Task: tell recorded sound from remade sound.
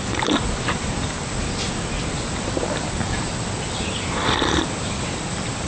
recorded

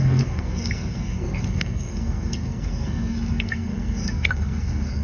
remade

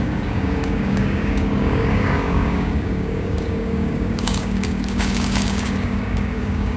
remade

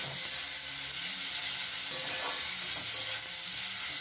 recorded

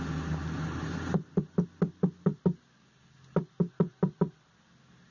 recorded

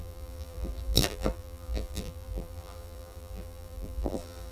remade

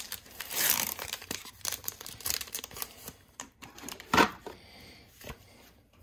remade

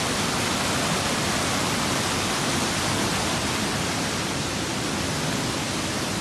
recorded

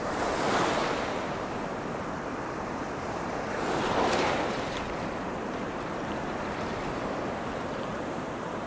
remade